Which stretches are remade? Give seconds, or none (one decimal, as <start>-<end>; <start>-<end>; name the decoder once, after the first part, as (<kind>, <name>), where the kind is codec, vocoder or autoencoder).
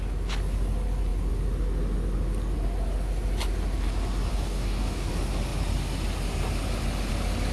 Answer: 4.3-5.1 (codec, DAC)